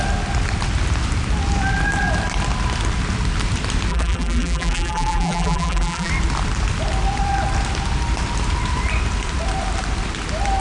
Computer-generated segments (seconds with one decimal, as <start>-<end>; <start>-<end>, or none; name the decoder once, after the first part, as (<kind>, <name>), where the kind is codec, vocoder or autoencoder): 3.9-6.1 (vocoder, BigVGAN v2)